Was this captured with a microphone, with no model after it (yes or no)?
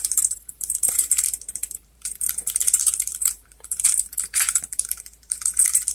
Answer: no